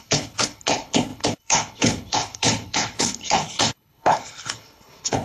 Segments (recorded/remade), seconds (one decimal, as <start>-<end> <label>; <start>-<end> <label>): 0.0-5.2 remade

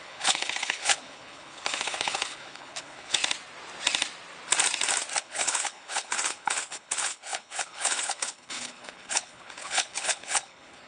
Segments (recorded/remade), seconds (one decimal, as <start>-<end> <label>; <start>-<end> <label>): 0.0-3.2 remade; 3.2-5.2 recorded; 5.2-10.9 remade

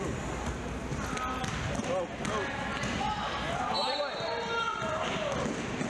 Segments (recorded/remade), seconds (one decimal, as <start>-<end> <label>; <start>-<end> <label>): 0.0-5.9 recorded